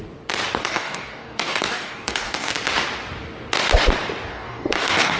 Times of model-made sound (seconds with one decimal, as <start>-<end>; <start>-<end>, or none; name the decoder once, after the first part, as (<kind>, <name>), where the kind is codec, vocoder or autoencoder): 0.6-2.5 (codec, DAC); 4.3-5.2